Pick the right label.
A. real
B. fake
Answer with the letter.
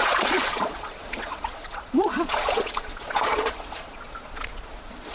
B